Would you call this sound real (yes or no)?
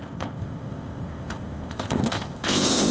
no